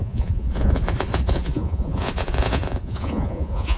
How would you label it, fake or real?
fake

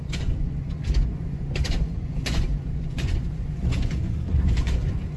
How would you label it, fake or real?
fake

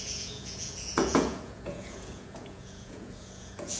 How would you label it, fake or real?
fake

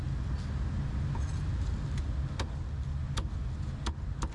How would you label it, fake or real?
real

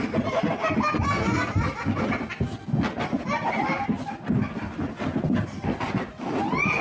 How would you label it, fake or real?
real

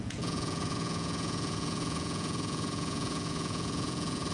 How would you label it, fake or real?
fake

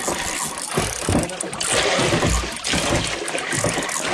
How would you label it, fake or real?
real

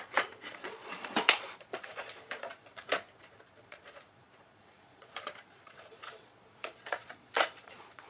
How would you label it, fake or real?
fake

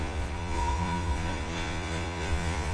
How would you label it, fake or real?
fake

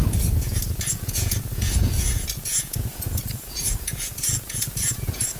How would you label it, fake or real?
fake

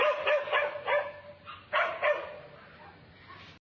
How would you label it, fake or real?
real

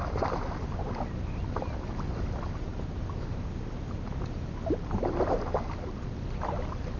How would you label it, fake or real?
real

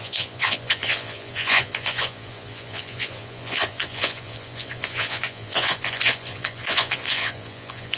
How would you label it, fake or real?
fake